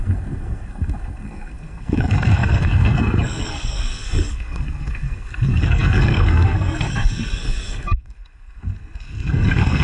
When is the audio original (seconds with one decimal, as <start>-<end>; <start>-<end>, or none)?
none